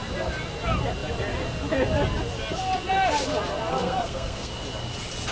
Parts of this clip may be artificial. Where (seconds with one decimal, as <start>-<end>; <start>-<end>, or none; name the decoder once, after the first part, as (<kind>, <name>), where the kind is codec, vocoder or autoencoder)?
3.7-4.5 (codec, SNAC)